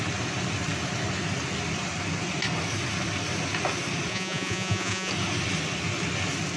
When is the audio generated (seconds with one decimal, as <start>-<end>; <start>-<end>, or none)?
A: 4.1-5.1